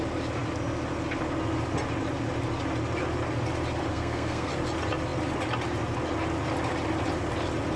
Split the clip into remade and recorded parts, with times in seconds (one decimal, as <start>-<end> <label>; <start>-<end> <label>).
0.0-3.9 recorded; 3.9-4.5 remade; 4.5-7.8 recorded